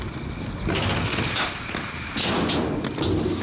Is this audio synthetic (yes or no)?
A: no